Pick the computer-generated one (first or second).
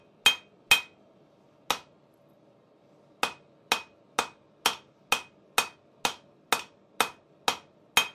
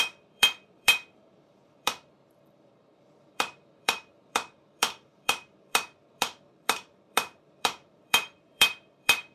second